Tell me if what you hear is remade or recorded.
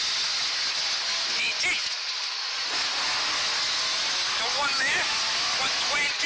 recorded